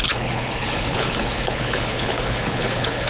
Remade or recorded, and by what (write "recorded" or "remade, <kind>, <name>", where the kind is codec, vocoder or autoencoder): remade, codec, HILCodec